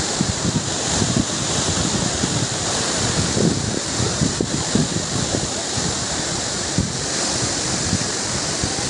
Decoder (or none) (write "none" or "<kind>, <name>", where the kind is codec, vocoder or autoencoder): vocoder, BigVGAN v2